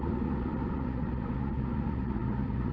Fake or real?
fake